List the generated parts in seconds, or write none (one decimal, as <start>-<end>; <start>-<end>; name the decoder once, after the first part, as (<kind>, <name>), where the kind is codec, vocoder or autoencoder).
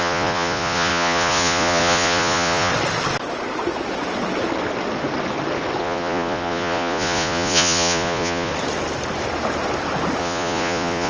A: 0.0-2.7 (vocoder, Vocos); 5.8-8.5; 10.2-11.1